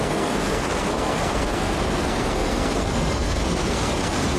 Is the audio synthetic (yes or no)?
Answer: yes